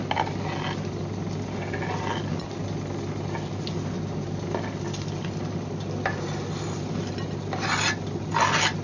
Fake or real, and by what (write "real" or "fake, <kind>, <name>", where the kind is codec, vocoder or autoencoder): real